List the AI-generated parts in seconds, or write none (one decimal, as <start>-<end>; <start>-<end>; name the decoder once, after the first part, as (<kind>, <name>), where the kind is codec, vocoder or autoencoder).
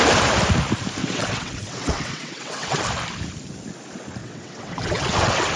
1.0-2.8 (vocoder, WaveNeXt); 4.2-5.6